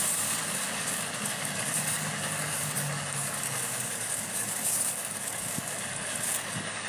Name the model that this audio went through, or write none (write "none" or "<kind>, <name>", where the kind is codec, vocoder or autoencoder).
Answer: codec, DAC